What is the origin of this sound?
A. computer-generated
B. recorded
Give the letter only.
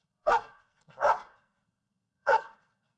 A